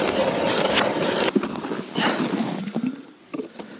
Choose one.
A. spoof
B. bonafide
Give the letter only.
B